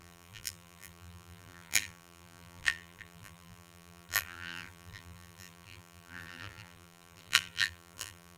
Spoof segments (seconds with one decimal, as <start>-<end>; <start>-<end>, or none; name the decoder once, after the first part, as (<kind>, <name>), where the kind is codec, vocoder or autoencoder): 0.0-8.4 (vocoder, BigVGAN v2)